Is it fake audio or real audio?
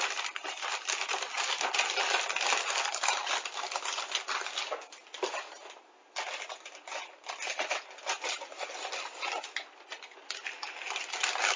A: real